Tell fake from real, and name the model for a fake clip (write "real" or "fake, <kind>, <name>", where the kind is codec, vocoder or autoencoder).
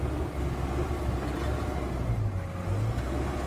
real